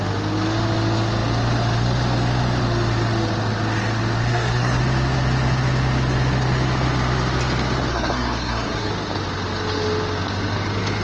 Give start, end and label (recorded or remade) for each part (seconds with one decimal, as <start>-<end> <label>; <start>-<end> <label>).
0.0-4.3 recorded; 4.3-4.8 remade; 4.8-7.9 recorded; 7.9-8.9 remade; 8.9-11.0 recorded